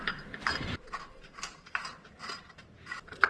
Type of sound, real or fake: real